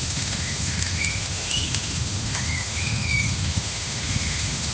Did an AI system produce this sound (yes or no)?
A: yes